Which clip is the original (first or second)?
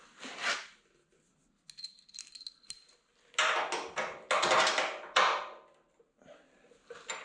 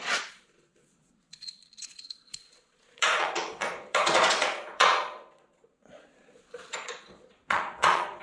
first